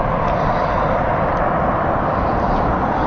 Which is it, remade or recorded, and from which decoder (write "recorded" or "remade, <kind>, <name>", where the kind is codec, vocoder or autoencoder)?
recorded